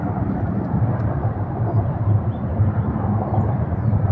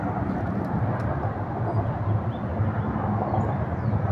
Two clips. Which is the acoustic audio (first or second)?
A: second